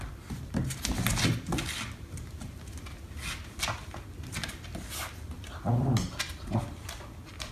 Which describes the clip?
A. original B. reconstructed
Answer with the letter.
A